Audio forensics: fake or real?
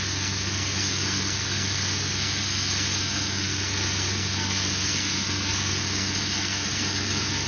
fake